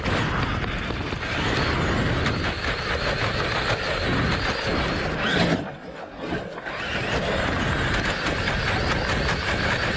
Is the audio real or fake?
real